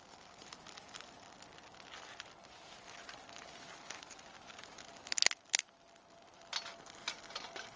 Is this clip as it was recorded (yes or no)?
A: yes